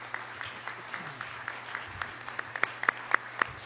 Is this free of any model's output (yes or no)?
yes